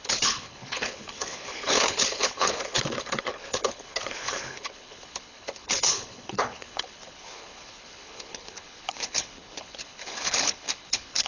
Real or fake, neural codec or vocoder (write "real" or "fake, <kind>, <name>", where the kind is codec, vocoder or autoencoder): fake, codec, HILCodec